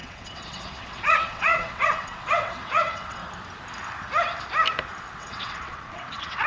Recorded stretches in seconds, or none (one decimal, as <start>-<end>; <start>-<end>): 3.2-5.2